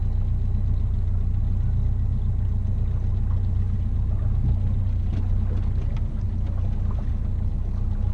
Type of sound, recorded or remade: recorded